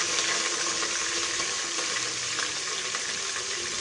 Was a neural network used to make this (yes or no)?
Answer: no